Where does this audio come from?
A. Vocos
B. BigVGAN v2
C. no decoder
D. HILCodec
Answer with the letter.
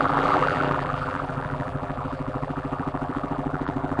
B